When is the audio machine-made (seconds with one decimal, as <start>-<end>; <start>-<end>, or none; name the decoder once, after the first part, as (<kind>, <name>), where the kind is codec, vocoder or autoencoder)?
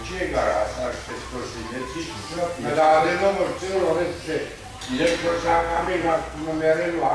0.5-1.1 (codec, SNAC); 5.2-6.4